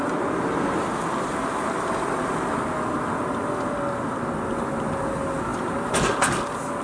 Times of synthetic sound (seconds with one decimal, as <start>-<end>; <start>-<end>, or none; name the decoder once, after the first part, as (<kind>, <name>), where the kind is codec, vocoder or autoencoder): none